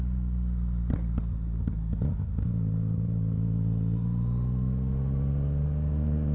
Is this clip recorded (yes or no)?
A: yes